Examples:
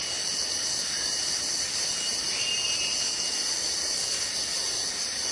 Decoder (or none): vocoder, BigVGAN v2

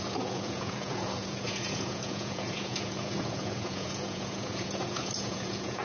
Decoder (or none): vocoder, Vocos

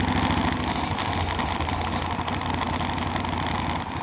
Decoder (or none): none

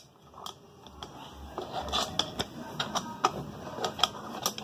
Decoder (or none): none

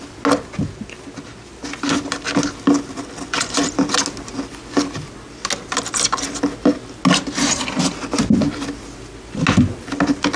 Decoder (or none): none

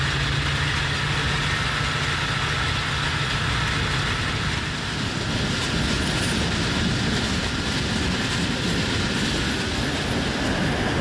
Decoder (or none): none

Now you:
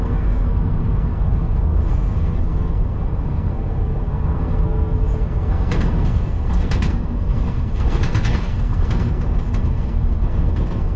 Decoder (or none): codec, SNAC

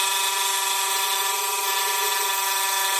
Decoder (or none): none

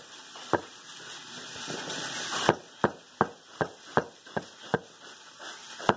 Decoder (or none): none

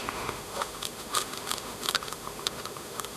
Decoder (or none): autoencoder, DAC-VAE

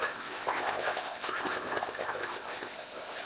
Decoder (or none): codec, ZipCodec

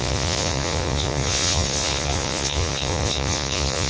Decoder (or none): vocoder, Vocos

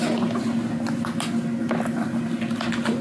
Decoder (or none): none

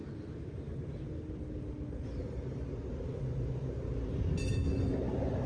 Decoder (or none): none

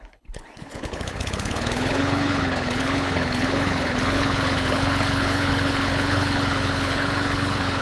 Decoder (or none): codec, HILCodec